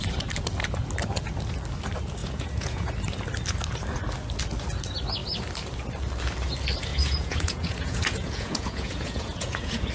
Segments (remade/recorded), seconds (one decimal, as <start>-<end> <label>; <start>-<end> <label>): 0.0-2.2 recorded; 2.2-2.9 remade; 2.9-6.9 recorded; 6.9-9.9 remade